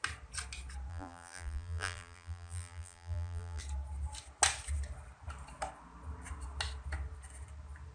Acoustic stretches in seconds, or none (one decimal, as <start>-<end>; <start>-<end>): 0.0-0.9; 3.6-7.9